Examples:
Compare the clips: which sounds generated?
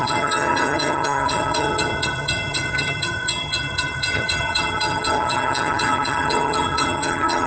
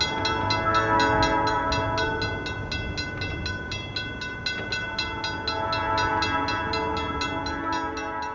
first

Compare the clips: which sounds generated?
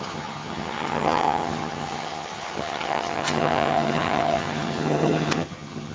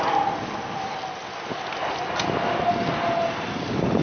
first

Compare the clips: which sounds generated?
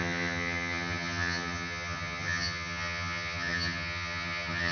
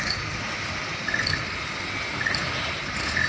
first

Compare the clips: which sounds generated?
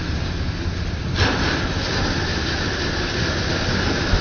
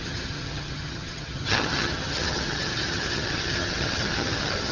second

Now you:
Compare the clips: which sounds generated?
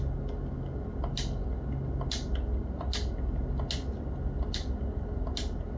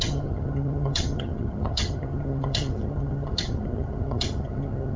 second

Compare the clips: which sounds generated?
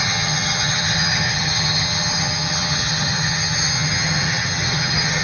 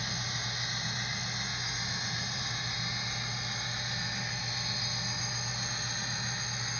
first